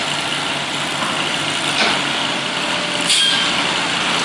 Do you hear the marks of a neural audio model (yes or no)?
no